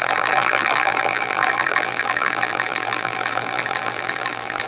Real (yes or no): no